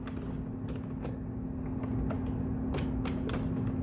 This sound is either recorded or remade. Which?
recorded